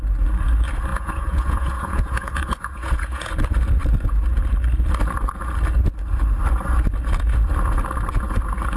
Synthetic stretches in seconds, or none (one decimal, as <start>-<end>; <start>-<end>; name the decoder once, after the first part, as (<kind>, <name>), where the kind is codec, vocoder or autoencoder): 0.9-3.3 (vocoder, Vocos)